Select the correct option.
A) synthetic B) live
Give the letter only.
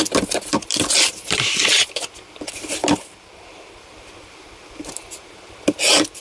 B